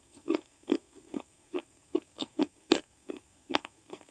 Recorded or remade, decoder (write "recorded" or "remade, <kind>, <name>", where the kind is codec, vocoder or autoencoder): remade, codec, SNAC